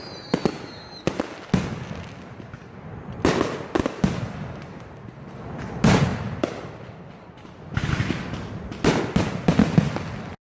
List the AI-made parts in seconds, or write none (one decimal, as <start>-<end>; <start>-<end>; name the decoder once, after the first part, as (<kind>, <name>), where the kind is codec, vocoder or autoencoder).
none